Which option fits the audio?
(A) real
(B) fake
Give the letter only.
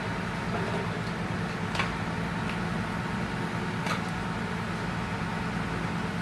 A